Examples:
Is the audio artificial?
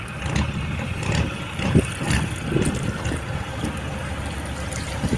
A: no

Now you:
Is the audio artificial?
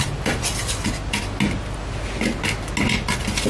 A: no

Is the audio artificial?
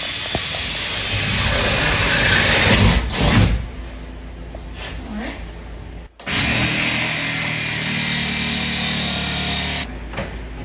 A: no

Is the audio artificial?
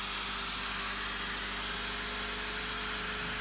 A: no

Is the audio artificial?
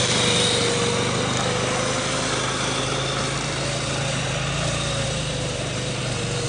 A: no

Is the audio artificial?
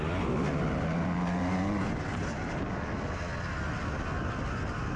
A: no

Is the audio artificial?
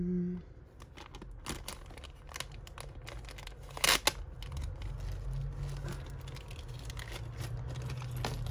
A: no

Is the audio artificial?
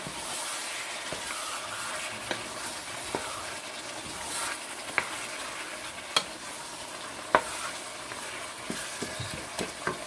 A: no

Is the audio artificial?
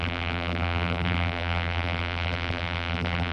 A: yes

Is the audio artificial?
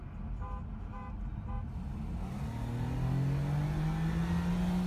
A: no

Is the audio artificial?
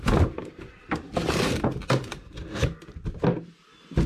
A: no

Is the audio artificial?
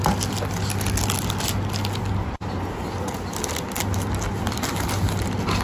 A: no